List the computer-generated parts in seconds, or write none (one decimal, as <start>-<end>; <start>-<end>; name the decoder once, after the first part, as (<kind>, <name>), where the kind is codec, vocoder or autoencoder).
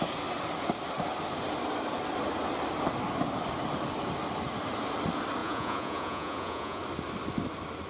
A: 5.4-6.8 (vocoder, Vocos)